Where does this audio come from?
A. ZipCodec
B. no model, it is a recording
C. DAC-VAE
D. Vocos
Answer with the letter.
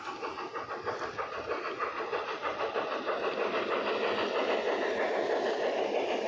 B